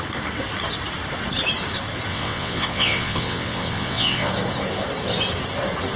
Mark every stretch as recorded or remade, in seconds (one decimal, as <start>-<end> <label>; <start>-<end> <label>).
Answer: 0.0-2.1 recorded; 2.1-4.3 remade; 4.3-6.0 recorded